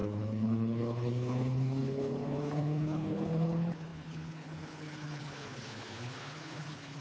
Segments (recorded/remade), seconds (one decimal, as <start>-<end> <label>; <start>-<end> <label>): 0.0-7.0 remade